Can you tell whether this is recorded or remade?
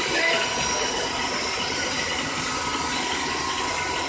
recorded